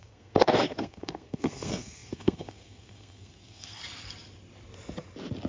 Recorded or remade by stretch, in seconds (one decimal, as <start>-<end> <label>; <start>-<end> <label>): 0.0-3.8 remade; 3.8-5.5 recorded